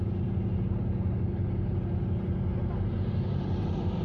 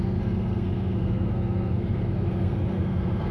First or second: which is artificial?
second